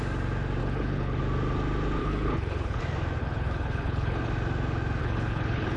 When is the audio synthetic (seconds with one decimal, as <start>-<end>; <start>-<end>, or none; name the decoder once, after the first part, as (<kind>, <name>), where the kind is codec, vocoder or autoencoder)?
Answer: 0.6-1.2 (codec, HILCodec); 2.0-2.8; 3.2-4.3; 5.0-5.8